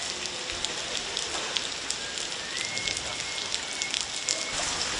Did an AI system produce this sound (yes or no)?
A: no